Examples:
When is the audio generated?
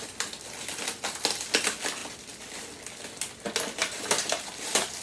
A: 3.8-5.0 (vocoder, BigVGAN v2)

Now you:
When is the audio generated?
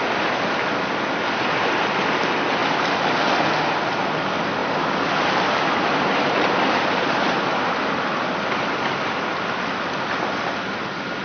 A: 4.6-7.4 (vocoder, BigVGAN v2)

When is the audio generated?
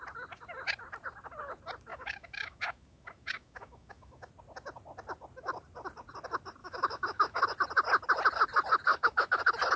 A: 1.9-4.3 (autoencoder, DAC-VAE); 6.6-7.4; 8.9-9.4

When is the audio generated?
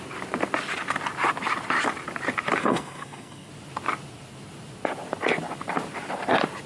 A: 2.6-3.5 (codec, SNAC)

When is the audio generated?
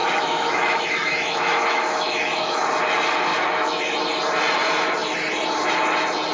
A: 0.0-2.6 (autoencoder, DAC-VAE); 3.3-3.8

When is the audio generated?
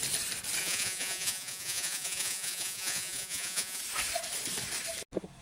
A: 0.6-3.8 (vocoder, Vocos)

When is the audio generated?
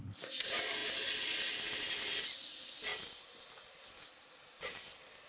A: none